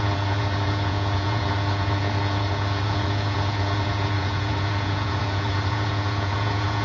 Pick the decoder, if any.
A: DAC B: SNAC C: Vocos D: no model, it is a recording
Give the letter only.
C